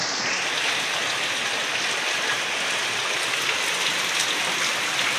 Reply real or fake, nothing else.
real